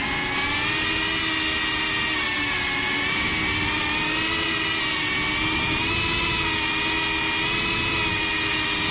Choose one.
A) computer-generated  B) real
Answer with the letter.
B